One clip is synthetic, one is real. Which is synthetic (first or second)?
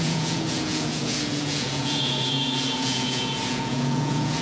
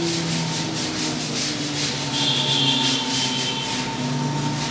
first